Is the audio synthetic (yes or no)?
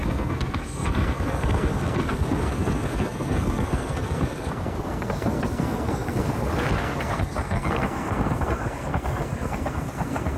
yes